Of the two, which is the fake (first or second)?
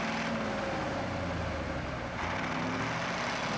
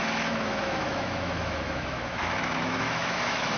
second